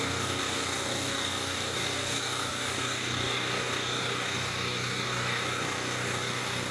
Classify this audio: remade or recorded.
remade